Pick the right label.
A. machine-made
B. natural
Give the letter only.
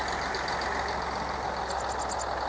B